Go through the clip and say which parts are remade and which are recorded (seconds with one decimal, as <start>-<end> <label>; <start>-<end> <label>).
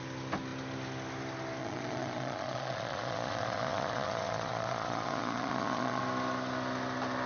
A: 0.0-1.6 recorded; 1.6-6.0 remade; 6.0-7.3 recorded